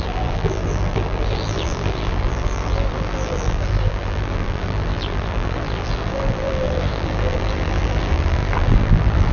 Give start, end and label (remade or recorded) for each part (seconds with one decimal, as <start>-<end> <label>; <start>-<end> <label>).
0.0-9.3 remade